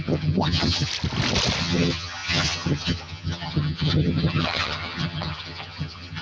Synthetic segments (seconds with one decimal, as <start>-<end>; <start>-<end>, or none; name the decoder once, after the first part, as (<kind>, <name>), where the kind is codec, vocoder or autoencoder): 0.0-0.9 (vocoder, HiFi-GAN); 1.6-6.2